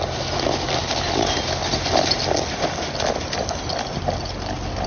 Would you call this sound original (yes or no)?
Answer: yes